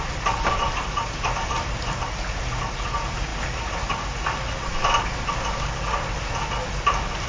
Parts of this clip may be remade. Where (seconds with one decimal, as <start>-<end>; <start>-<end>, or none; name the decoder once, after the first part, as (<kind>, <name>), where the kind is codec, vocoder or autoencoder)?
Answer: none